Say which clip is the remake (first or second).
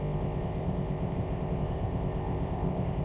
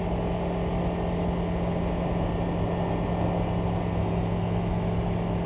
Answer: first